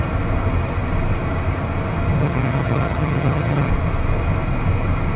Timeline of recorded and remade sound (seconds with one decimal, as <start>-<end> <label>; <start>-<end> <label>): 0.0-2.2 recorded; 2.2-3.7 remade; 3.7-5.2 recorded